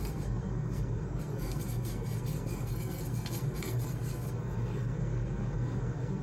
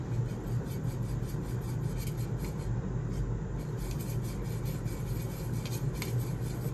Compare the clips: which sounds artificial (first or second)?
first